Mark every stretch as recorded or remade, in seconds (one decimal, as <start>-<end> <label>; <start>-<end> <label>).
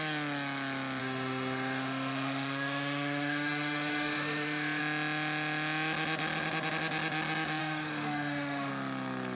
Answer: 0.0-1.0 recorded; 1.0-4.8 remade; 4.8-7.6 recorded; 7.6-8.7 remade; 8.7-9.3 recorded